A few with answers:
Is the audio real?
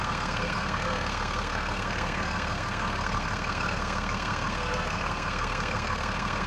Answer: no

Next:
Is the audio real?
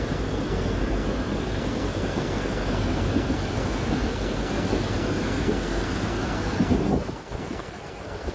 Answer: no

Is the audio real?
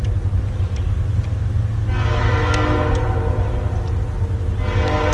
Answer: yes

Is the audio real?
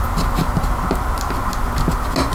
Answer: yes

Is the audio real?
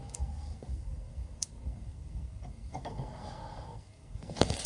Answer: no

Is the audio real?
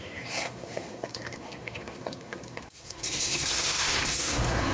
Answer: no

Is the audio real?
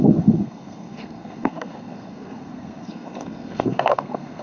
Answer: no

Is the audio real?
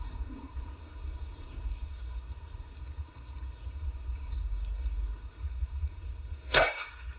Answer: no